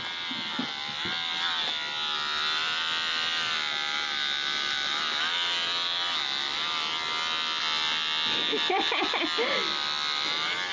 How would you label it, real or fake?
real